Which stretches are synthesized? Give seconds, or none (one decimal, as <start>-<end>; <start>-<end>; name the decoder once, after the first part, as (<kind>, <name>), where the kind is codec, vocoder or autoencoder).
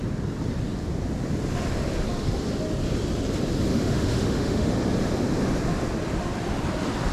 3.7-4.7 (autoencoder, DAC-VAE)